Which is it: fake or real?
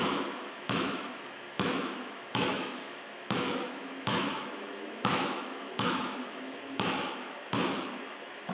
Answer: fake